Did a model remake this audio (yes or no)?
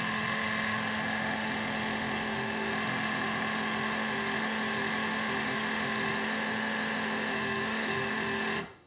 yes